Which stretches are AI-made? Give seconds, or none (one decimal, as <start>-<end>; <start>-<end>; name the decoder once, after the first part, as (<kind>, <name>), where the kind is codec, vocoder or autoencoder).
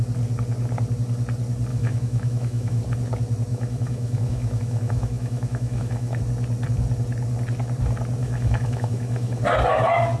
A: 1.7-2.8 (autoencoder, DAC-VAE); 3.5-6.2; 8.2-9.4